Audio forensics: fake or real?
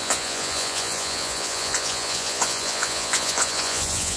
fake